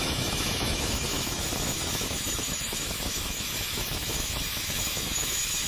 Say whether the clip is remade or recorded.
remade